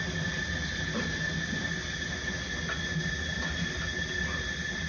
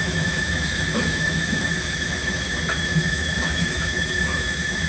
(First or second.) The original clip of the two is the first